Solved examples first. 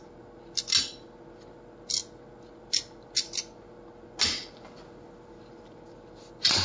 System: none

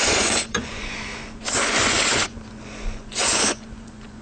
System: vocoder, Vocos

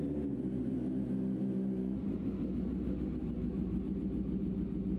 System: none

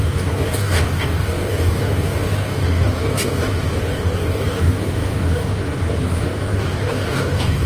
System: codec, DAC